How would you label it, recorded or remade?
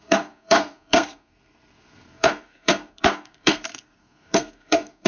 remade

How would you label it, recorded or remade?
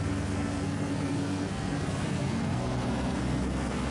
remade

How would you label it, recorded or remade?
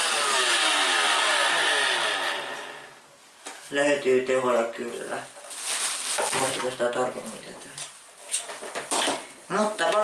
recorded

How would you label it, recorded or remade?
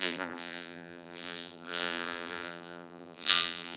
remade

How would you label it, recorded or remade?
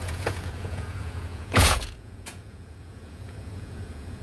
remade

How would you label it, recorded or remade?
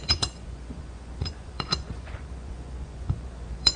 remade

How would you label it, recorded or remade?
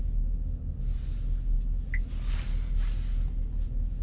recorded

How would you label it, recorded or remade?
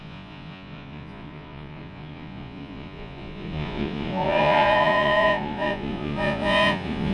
remade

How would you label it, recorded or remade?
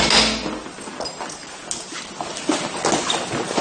recorded